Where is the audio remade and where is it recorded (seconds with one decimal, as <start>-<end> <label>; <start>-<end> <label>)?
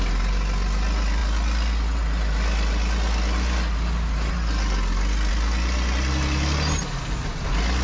0.0-7.8 recorded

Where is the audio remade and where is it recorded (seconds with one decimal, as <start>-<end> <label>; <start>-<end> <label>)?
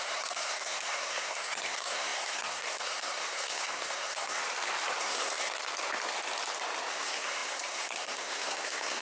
0.0-4.4 remade; 4.4-5.0 recorded; 5.0-5.5 remade; 5.5-6.9 recorded; 6.9-9.0 remade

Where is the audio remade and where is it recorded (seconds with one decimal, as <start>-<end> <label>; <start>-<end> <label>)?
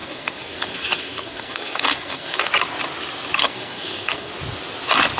0.0-2.5 remade; 2.5-3.4 recorded; 3.4-4.3 remade; 4.3-5.2 recorded